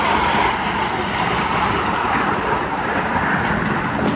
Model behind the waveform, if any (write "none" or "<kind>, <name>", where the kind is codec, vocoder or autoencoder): none